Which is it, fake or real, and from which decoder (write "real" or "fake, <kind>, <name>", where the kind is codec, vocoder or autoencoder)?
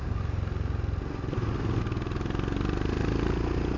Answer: real